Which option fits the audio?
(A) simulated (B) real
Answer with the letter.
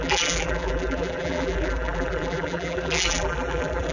A